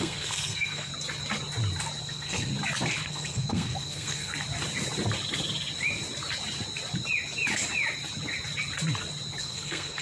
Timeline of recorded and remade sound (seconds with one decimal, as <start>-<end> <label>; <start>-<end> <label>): 0.0-0.9 remade; 0.9-2.0 recorded; 2.0-2.5 remade; 2.5-3.1 recorded; 3.1-4.3 remade; 4.3-9.4 recorded; 9.4-10.0 remade